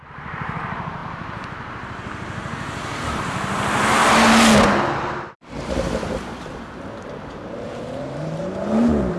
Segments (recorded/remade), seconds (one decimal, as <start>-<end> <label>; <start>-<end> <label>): 0.0-4.0 remade; 4.0-5.3 recorded; 5.3-6.3 remade; 6.3-7.2 recorded; 7.2-9.2 remade